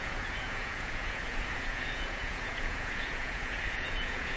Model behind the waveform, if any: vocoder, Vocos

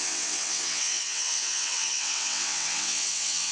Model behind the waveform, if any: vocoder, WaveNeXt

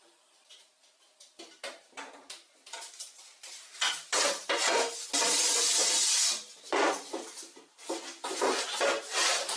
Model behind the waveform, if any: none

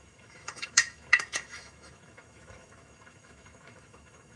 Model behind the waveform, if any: autoencoder, DAC-VAE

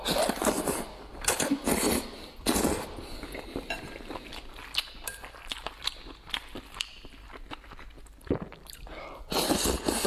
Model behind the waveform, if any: none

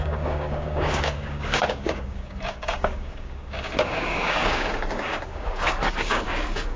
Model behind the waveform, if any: codec, DAC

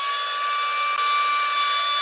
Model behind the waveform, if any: none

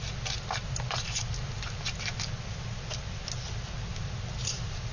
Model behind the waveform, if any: none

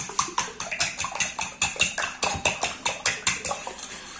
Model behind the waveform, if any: none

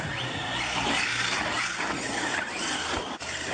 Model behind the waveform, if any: none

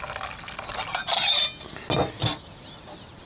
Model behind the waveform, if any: none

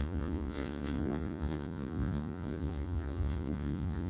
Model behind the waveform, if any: vocoder, Vocos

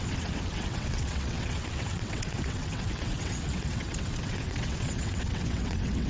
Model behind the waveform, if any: vocoder, WaveNeXt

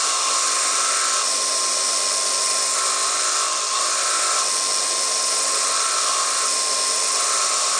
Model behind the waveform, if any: none